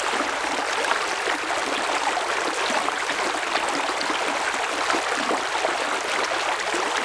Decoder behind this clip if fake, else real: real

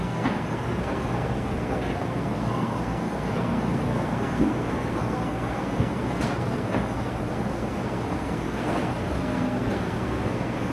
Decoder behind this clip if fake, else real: fake, codec, SNAC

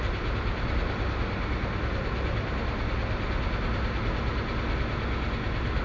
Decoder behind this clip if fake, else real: real